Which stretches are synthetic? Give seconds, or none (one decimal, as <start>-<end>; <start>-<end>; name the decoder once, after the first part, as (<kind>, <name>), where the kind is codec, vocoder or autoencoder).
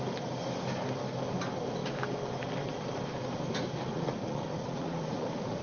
3.9-5.6 (vocoder, Vocos)